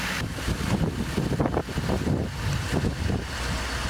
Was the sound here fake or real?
real